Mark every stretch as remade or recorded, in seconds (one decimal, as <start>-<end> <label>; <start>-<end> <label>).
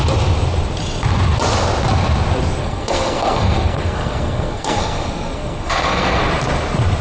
0.0-2.6 recorded; 2.6-6.3 remade; 6.3-7.0 recorded